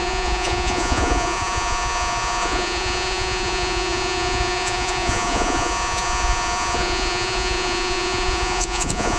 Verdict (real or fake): fake